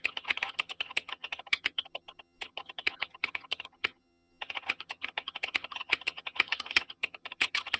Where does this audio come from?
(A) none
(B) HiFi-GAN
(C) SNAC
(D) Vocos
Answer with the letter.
B